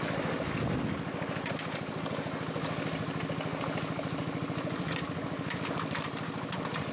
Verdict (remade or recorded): recorded